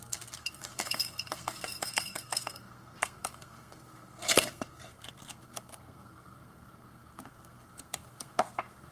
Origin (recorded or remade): remade